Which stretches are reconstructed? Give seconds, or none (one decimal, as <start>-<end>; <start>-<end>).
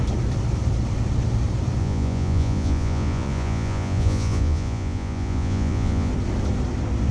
1.8-6.1